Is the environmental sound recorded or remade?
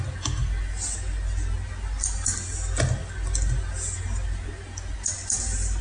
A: recorded